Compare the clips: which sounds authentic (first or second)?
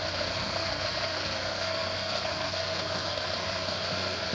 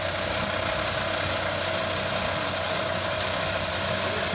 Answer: second